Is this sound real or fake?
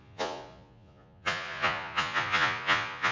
fake